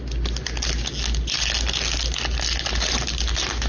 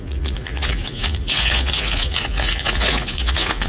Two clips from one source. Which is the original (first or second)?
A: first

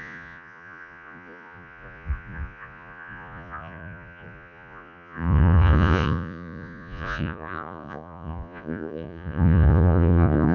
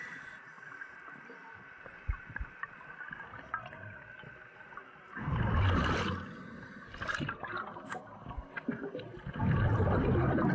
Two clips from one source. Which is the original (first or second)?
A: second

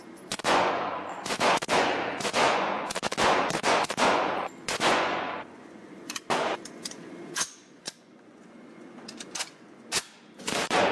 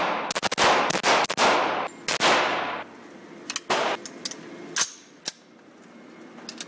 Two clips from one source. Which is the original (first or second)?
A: second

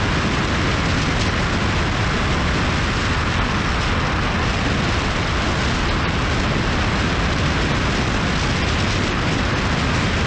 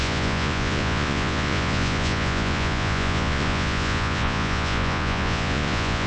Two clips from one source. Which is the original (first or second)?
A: first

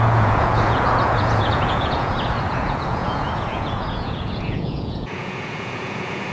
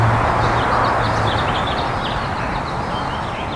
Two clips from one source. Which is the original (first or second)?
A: second